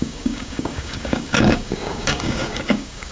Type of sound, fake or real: fake